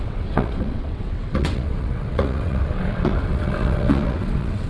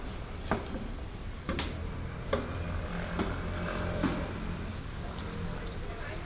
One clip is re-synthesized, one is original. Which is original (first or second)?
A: second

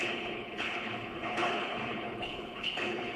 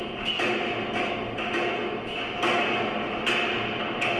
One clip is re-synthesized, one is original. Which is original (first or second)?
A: second